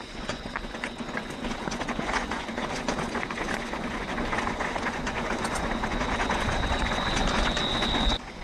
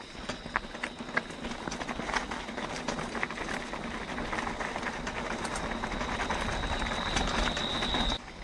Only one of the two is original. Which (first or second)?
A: second